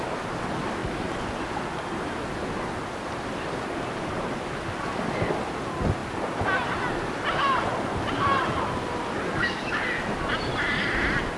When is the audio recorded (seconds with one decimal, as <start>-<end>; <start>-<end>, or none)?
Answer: 0.0-9.4; 9.9-11.4